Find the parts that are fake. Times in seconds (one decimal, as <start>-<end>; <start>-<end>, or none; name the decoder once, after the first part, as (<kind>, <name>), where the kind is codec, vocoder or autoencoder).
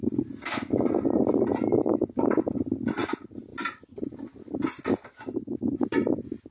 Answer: none